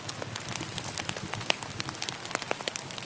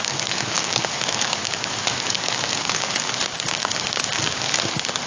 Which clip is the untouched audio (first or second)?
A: first